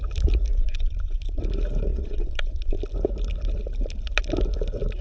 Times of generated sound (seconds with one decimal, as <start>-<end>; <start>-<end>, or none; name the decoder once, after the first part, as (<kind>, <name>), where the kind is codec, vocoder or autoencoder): 0.5-1.4 (vocoder, Vocos); 1.9-2.8